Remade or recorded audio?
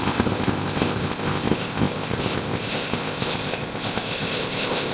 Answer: remade